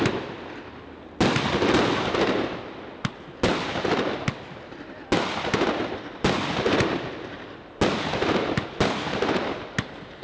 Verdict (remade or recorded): recorded